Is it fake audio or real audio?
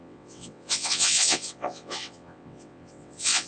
fake